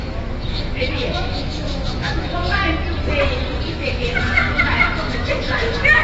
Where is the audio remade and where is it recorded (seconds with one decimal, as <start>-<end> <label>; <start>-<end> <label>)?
0.0-2.6 remade; 2.6-3.7 recorded; 3.7-6.0 remade